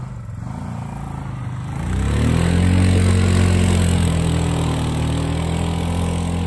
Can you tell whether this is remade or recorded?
recorded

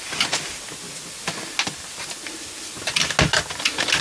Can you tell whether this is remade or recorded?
recorded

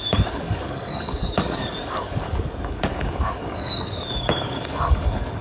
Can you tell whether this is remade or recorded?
remade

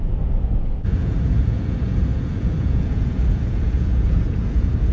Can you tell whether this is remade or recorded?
remade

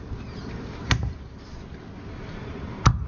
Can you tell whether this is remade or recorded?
recorded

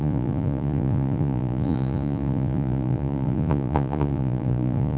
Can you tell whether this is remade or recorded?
remade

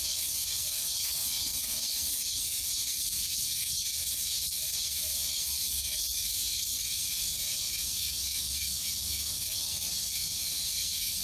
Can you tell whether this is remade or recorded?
remade